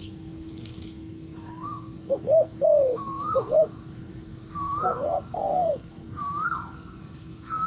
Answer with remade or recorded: remade